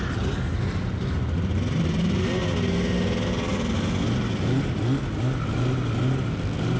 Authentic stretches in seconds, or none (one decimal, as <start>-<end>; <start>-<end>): 0.0-6.8